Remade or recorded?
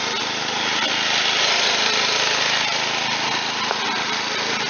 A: recorded